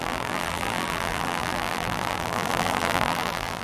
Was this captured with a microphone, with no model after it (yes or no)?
no